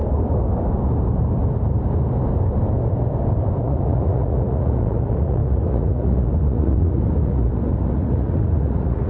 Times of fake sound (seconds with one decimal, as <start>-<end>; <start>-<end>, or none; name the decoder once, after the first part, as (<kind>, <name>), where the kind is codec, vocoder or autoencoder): 3.6-9.1 (vocoder, Vocos)